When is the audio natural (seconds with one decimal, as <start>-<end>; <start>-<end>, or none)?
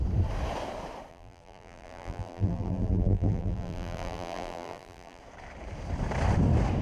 0.0-1.1; 5.2-6.8